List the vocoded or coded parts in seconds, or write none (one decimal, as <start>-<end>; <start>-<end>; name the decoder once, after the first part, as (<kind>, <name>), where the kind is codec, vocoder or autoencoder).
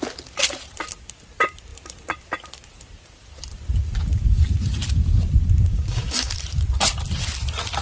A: 5.7-6.3 (codec, DAC)